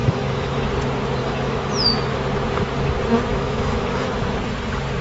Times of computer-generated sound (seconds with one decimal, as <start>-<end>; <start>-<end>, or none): 0.0-0.7; 1.2-1.7; 3.3-4.2